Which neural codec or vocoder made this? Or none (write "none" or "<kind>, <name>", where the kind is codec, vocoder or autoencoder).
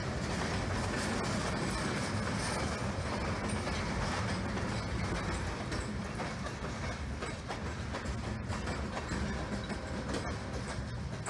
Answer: none